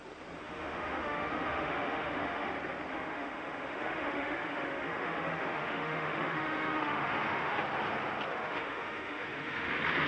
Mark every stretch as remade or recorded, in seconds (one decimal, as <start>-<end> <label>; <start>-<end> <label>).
0.0-0.4 recorded; 0.4-2.5 remade; 2.5-2.9 recorded; 2.9-7.6 remade; 7.6-8.3 recorded; 8.3-9.7 remade; 9.7-10.1 recorded